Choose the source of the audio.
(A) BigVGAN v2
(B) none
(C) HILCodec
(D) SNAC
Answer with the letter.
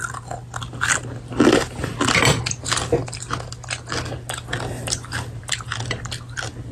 B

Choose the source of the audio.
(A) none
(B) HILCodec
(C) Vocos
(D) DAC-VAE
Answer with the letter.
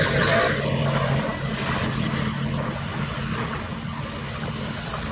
A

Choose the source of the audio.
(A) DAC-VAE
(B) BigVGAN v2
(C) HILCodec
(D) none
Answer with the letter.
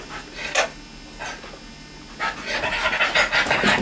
D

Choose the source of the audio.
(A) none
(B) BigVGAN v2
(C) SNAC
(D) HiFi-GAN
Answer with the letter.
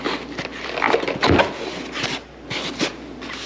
A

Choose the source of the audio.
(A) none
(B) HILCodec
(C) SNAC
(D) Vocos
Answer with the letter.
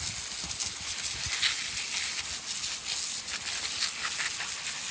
A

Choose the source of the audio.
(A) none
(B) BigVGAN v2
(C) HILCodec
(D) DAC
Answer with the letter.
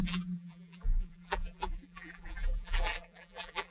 B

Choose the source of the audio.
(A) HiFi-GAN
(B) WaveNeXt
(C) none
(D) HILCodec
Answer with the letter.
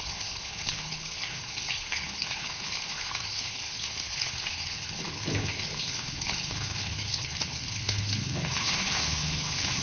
D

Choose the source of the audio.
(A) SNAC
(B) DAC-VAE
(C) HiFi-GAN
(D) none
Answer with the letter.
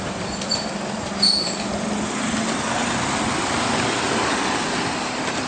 D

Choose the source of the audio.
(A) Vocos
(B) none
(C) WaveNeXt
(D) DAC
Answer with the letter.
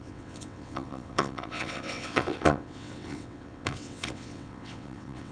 C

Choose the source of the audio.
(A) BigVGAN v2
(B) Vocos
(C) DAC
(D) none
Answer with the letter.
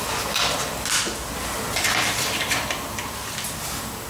D